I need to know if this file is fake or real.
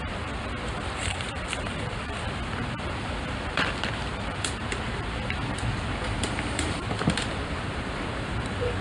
fake